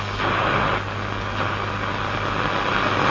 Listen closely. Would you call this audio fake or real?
real